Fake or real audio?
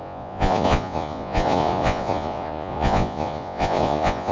fake